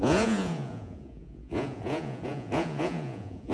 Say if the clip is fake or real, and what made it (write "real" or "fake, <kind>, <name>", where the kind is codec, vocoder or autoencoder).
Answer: fake, vocoder, Vocos